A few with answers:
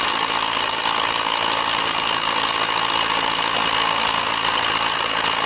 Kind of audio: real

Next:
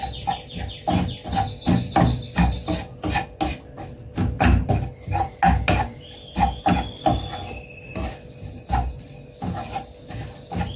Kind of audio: real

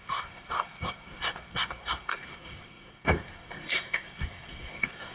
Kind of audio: fake